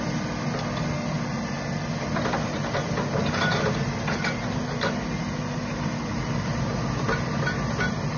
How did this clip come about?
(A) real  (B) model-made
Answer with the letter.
A